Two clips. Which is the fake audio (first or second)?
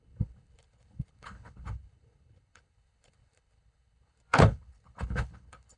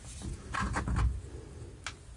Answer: first